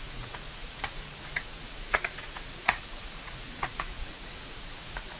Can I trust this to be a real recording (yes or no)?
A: no